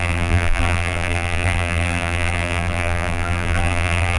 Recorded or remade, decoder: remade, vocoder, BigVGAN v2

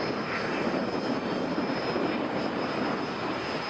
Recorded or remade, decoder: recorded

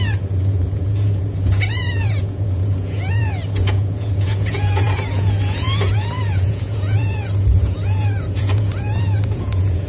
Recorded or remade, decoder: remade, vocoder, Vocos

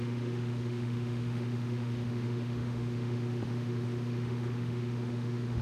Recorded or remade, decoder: remade, autoencoder, DAC-VAE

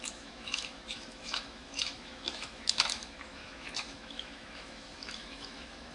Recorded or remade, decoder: remade, autoencoder, DAC-VAE